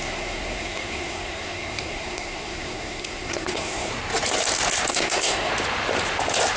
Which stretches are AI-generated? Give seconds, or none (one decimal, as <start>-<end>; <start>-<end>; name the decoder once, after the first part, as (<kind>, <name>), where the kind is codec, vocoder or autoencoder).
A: 0.0-3.9 (codec, SNAC); 4.9-5.5

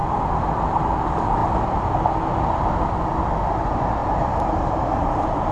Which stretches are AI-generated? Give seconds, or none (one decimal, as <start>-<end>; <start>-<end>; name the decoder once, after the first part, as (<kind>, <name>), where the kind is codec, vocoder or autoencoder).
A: 4.0-5.5 (vocoder, BigVGAN v2)

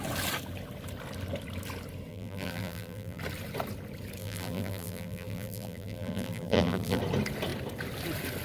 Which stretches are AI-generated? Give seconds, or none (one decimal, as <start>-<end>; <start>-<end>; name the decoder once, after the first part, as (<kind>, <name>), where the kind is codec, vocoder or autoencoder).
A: 2.1-3.2 (vocoder, BigVGAN v2); 4.2-7.0

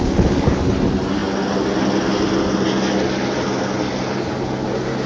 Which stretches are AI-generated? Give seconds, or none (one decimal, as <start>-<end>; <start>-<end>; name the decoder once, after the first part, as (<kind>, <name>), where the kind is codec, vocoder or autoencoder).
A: none